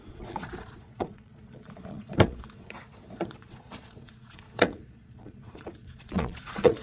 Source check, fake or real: fake